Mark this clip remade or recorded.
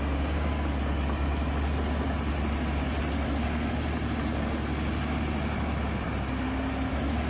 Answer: recorded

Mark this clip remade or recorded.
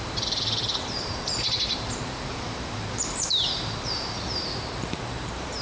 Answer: remade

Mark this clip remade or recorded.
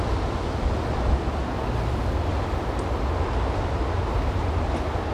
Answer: recorded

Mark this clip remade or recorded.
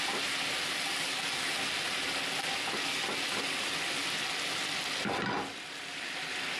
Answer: recorded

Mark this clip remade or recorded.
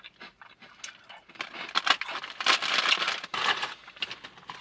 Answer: recorded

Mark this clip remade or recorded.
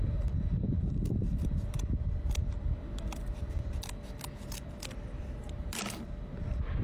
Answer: remade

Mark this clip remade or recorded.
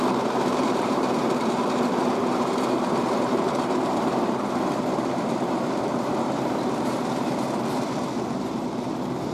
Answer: remade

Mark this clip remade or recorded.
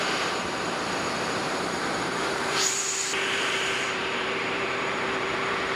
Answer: remade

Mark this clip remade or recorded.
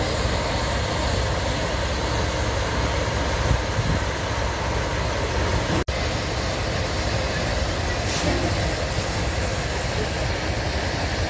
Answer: recorded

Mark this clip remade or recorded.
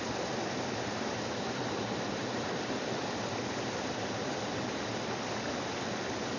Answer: recorded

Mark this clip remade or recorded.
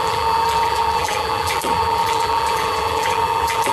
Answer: remade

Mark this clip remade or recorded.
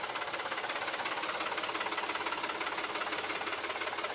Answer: recorded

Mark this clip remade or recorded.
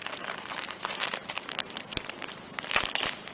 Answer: remade